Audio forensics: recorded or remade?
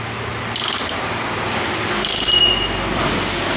recorded